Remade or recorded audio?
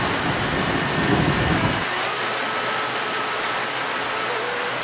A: recorded